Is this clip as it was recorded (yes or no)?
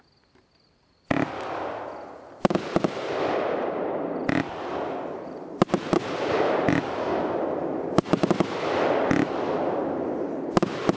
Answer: yes